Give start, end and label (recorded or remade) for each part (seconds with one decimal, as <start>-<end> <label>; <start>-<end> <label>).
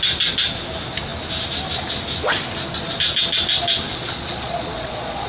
0.0-3.9 recorded; 3.9-5.3 remade